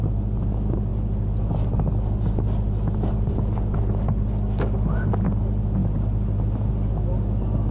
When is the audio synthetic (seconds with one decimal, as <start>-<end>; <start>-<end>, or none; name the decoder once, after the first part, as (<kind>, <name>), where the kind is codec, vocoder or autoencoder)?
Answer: none